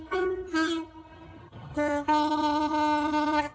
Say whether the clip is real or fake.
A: fake